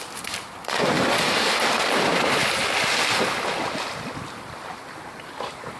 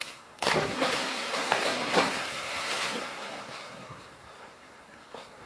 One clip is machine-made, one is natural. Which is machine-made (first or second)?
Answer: second